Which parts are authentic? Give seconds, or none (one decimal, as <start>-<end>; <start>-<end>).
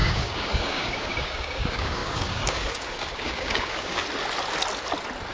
4.0-5.3